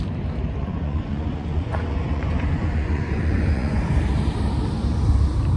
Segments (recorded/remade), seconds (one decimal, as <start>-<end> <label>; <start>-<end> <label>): 0.0-0.6 recorded; 0.6-4.0 remade; 4.0-5.6 recorded